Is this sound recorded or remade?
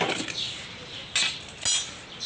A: recorded